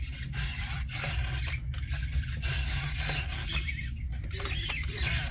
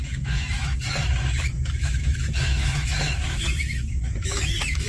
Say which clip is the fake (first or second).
second